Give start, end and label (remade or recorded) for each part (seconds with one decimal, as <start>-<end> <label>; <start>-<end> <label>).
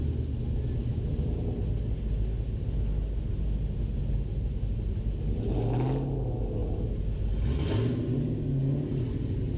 0.0-9.6 recorded